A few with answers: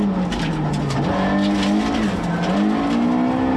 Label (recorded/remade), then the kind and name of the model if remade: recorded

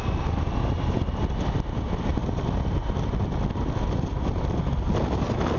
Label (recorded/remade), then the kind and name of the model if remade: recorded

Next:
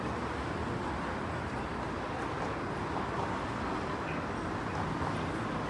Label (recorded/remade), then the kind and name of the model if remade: remade, vocoder, BigVGAN v2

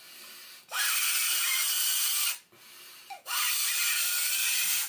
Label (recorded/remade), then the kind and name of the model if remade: recorded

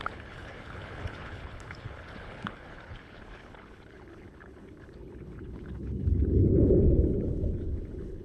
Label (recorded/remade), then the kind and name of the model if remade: remade, codec, HILCodec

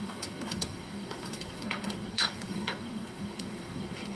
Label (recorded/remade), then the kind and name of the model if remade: remade, codec, SNAC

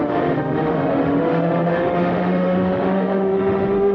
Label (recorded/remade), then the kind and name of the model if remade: remade, autoencoder, DAC-VAE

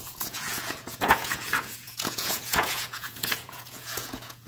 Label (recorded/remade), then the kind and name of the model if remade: remade, vocoder, Vocos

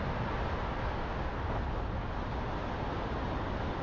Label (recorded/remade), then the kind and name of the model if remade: recorded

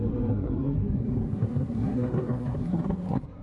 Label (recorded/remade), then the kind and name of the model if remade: remade, codec, SNAC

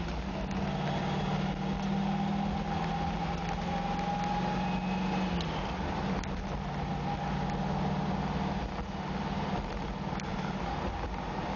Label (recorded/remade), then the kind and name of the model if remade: recorded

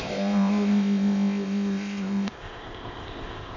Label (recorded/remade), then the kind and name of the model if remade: remade, codec, ZipCodec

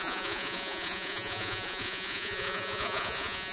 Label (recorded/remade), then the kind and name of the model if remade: remade, vocoder, Vocos